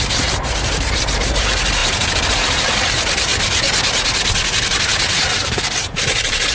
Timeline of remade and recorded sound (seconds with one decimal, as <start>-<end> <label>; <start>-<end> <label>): 0.0-3.3 remade; 3.3-4.5 recorded; 4.5-6.5 remade